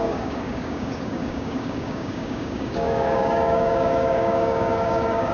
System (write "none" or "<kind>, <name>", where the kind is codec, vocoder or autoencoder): codec, DAC